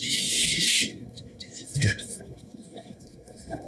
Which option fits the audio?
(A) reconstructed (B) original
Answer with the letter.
A